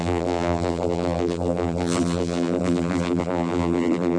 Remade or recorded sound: remade